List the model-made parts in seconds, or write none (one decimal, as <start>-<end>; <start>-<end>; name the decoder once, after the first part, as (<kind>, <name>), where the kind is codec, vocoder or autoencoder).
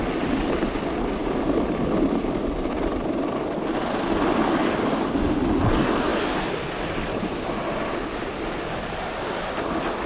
none